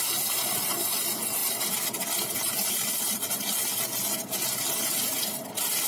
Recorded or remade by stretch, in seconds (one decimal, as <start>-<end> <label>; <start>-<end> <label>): 0.0-5.9 recorded